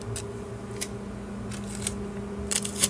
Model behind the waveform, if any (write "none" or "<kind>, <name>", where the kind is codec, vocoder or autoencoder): none